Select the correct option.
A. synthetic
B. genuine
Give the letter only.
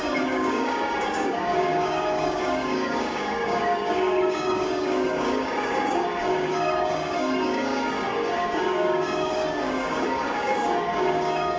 A